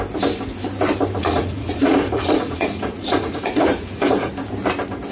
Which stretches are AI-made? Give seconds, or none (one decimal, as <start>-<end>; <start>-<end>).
1.2-4.3